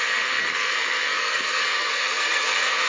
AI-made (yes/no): yes